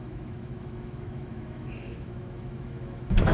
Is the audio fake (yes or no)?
yes